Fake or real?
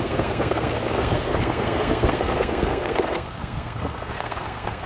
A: fake